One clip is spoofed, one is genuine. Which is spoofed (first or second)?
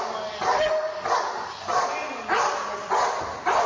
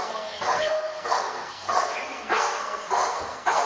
second